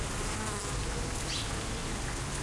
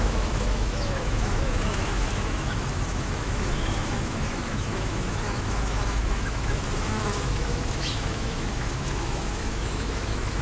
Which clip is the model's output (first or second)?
second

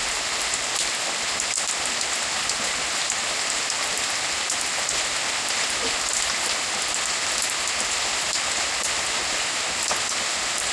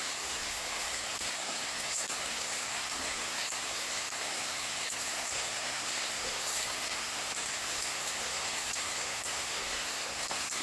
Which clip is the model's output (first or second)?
second